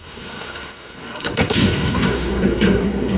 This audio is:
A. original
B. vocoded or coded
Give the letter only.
B